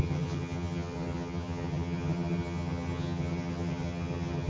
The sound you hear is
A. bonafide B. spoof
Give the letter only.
B